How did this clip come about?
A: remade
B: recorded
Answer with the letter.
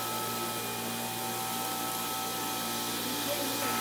B